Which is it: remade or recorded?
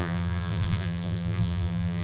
remade